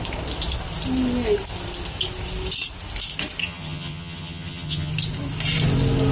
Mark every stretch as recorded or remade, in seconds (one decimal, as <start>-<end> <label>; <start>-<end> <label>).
0.0-3.4 recorded; 3.4-4.9 remade; 4.9-6.1 recorded